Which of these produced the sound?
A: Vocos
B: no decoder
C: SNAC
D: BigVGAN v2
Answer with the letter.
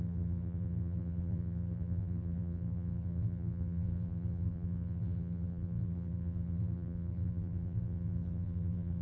D